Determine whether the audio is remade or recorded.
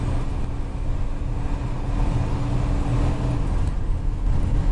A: recorded